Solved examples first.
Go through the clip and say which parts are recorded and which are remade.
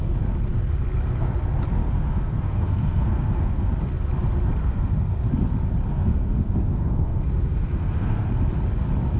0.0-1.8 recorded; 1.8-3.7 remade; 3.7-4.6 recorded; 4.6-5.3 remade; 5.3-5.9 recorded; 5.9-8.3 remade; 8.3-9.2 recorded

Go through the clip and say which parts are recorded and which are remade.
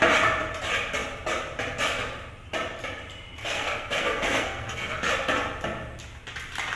0.0-3.4 recorded; 3.4-5.1 remade; 5.1-6.8 recorded